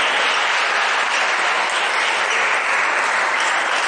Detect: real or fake real